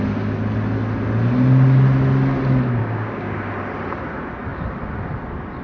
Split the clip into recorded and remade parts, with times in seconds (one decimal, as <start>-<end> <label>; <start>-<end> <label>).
0.0-2.8 recorded; 2.8-3.4 remade; 3.4-5.6 recorded